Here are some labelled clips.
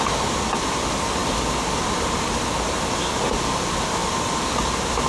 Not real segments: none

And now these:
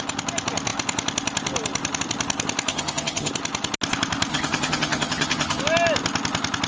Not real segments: 2.7-3.3 (vocoder, HiFi-GAN); 4.3-5.6

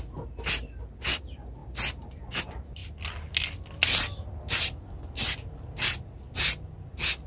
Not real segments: none

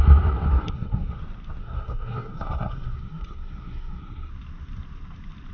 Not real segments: 0.5-1.2 (codec, SNAC); 1.6-4.3

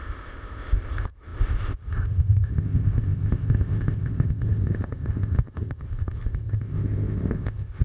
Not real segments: 0.0-7.8 (codec, ZipCodec)

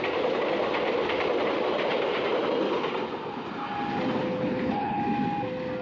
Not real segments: 4.2-5.0 (codec, HILCodec)

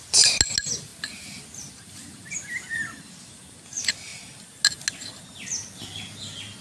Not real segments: none